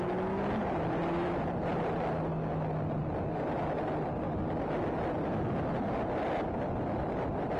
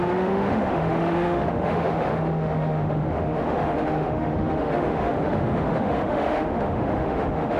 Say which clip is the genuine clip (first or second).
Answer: first